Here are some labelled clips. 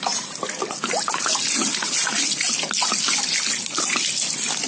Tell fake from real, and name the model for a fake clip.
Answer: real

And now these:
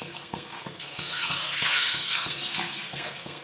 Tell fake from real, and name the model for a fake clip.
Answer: fake, codec, SNAC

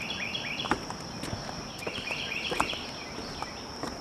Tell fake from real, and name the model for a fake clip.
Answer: fake, vocoder, BigVGAN v2